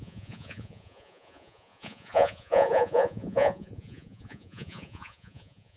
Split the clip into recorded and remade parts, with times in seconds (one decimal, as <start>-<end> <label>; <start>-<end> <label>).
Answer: 0.0-5.8 remade